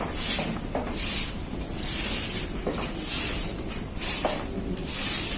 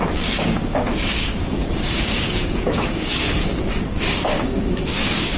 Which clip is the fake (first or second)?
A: second